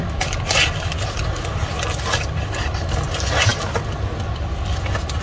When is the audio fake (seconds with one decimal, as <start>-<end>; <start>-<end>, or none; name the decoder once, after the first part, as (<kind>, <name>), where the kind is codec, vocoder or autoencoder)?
none